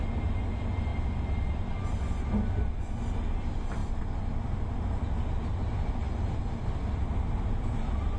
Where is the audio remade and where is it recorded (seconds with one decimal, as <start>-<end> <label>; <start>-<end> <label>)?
0.0-8.2 recorded